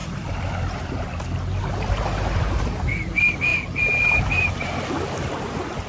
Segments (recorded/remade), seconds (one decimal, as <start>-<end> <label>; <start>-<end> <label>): 0.0-1.6 remade; 1.6-3.5 recorded; 3.5-4.2 remade; 4.2-5.9 recorded